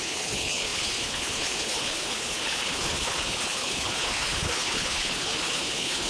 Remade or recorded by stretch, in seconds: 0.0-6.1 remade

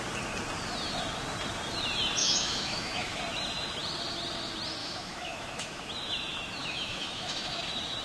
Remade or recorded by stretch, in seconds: 0.0-2.2 recorded; 2.2-3.2 remade; 3.2-4.8 recorded; 4.8-5.9 remade; 5.9-6.6 recorded; 6.6-7.6 remade; 7.6-8.0 recorded

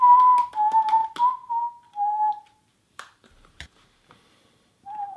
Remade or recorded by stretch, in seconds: 0.0-1.0 remade; 1.0-2.1 recorded; 2.1-5.2 remade

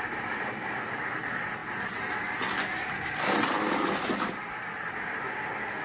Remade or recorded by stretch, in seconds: 0.0-1.6 remade; 1.6-2.9 recorded; 2.9-5.8 remade